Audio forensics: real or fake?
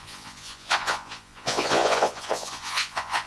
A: fake